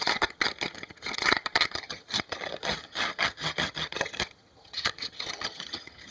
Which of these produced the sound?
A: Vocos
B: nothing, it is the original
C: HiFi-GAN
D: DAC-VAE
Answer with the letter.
C